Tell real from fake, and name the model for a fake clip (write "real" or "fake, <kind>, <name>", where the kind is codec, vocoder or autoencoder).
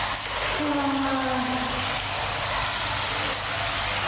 real